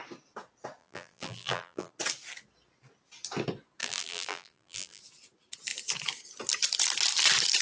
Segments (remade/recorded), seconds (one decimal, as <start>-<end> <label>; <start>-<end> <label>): 0.0-0.8 recorded; 0.8-1.9 remade; 1.9-3.8 recorded; 3.8-5.0 remade; 5.0-7.6 recorded